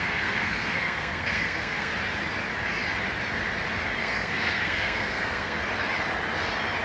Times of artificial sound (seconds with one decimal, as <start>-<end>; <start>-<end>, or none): 0.0-1.9; 4.0-5.6